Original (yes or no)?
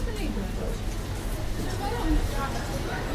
yes